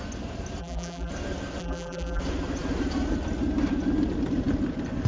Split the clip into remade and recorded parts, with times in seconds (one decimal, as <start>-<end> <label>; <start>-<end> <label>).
0.0-0.6 recorded; 0.6-1.1 remade; 1.1-1.6 recorded; 1.6-2.2 remade; 2.2-5.1 recorded